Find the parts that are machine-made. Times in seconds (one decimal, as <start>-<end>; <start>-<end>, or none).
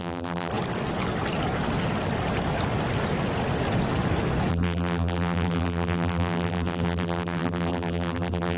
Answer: 0.0-0.5; 4.5-8.6